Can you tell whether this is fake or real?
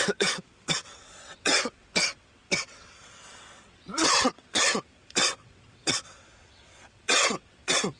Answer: fake